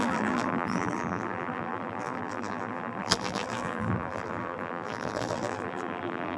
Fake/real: fake